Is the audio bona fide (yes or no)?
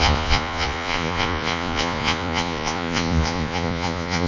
no